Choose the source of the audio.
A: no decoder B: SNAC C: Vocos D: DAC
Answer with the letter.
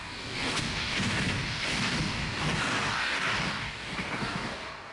D